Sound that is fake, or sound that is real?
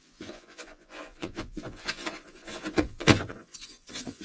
fake